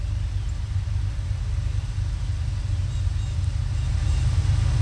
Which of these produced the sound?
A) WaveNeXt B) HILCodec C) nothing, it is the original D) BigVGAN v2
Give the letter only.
C